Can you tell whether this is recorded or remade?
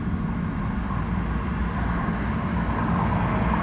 recorded